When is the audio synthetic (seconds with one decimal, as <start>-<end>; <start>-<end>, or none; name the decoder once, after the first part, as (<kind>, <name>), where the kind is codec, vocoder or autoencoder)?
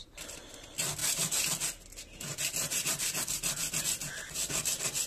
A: none